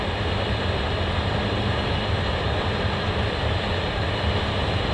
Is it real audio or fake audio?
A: real